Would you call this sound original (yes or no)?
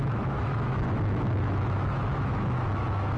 no